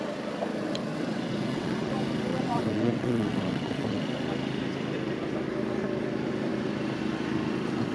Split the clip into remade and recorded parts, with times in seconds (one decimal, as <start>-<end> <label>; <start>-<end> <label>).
0.0-0.9 recorded; 0.9-1.9 remade; 1.9-2.3 recorded; 2.3-4.0 remade; 4.0-7.9 recorded